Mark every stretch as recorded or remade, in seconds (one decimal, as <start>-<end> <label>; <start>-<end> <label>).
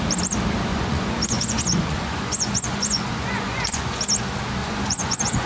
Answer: 0.0-0.7 recorded; 0.7-4.0 remade; 4.0-4.6 recorded; 4.6-5.5 remade